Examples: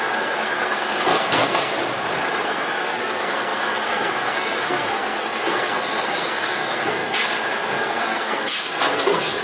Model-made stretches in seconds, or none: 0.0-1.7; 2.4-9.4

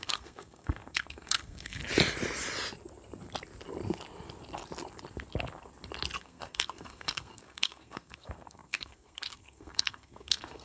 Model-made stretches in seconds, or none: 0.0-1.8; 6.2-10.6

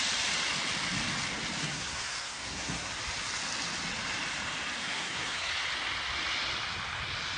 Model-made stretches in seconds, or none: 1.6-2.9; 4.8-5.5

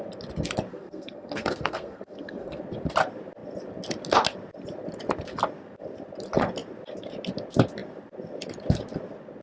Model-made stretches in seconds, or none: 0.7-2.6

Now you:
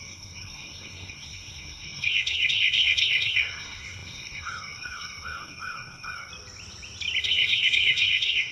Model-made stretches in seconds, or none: 0.0-6.3; 7.2-8.5

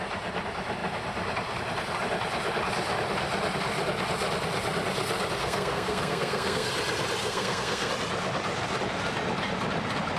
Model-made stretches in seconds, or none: 5.4-6.7; 7.2-7.9

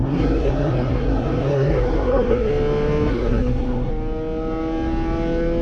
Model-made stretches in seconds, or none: 0.0-2.5; 3.1-3.9